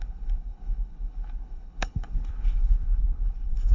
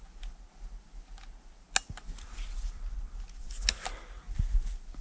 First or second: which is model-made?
first